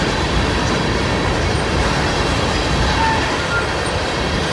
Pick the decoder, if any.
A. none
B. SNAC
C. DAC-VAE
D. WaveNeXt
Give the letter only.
A